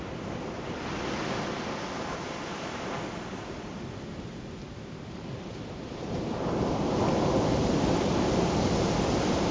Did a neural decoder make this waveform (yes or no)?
no